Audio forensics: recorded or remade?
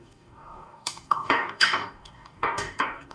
remade